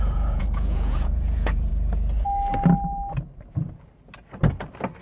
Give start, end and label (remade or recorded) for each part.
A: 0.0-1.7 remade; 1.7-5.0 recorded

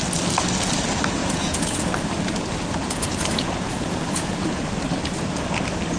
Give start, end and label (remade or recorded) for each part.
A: 0.0-1.2 recorded; 1.2-1.8 remade; 1.8-2.8 recorded; 2.8-4.7 remade; 4.7-6.0 recorded

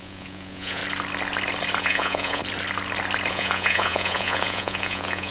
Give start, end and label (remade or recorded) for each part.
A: 0.0-0.8 remade; 0.8-1.8 recorded; 1.8-2.4 remade; 2.4-3.3 recorded; 3.3-5.3 remade

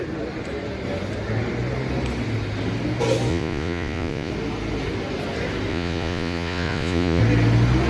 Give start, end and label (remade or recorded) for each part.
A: 0.0-3.3 recorded; 3.3-4.3 remade; 4.3-5.7 recorded; 5.7-7.2 remade; 7.2-7.9 recorded

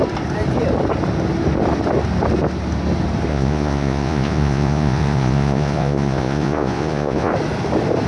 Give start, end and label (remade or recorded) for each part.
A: 0.0-3.3 recorded; 3.3-7.3 remade; 7.3-8.1 recorded

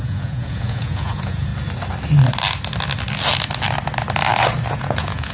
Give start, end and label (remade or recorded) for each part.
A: 0.0-1.5 remade; 1.5-4.7 recorded; 4.7-5.3 remade

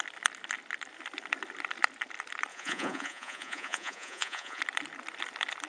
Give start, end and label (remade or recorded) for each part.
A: 0.0-2.5 recorded; 2.5-4.6 remade; 4.6-5.7 recorded